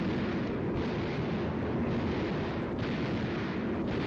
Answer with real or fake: real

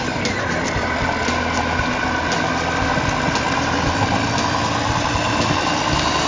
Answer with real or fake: real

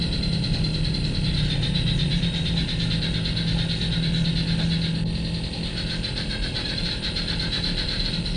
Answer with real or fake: real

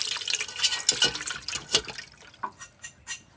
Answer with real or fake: real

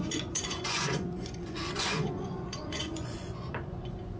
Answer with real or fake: fake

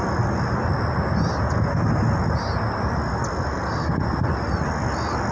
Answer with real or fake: real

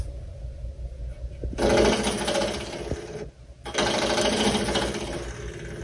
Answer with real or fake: real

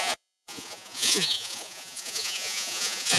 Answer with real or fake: fake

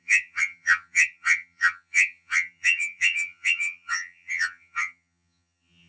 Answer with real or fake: fake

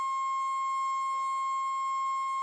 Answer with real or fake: fake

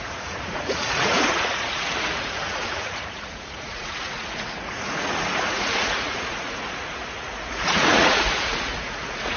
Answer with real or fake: fake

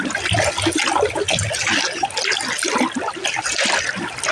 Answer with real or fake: real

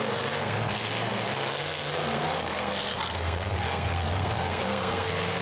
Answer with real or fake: fake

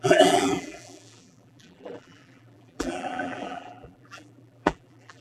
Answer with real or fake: fake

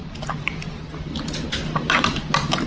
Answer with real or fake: real